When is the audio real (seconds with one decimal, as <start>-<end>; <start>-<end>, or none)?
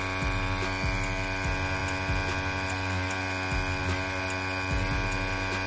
0.0-5.7